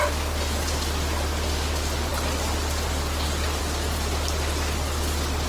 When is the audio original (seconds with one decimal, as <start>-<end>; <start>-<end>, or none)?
0.0-5.5